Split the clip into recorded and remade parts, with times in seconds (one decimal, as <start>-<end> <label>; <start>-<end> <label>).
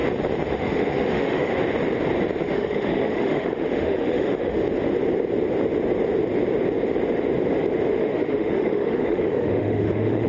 0.0-0.5 recorded; 0.5-1.5 remade; 1.5-2.4 recorded; 2.4-4.6 remade; 4.6-8.0 recorded; 8.0-10.3 remade